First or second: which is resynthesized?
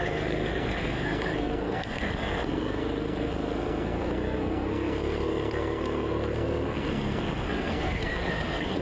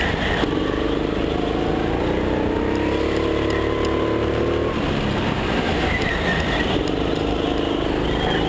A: first